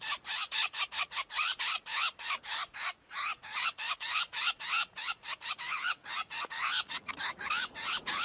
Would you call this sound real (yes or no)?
no